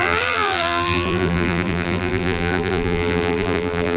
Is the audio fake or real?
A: fake